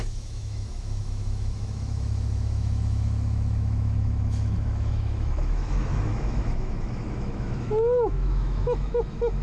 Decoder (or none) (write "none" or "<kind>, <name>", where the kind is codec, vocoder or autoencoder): autoencoder, DAC-VAE